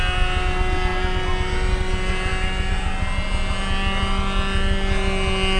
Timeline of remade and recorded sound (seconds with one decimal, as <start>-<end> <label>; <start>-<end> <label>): 0.0-5.6 recorded